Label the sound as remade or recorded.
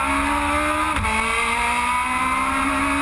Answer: recorded